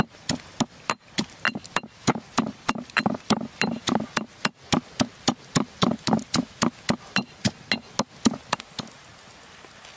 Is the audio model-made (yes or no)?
no